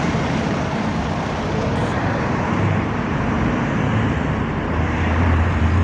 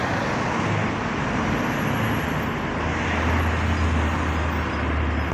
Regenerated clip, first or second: first